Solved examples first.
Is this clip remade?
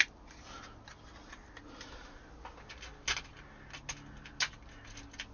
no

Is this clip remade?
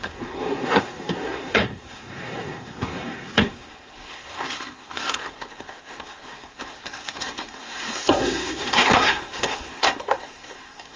yes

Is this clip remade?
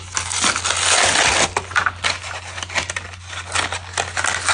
no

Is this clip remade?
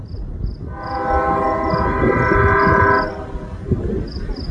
no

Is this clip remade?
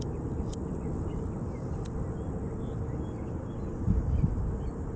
no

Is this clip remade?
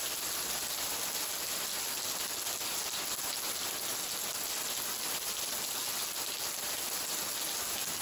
no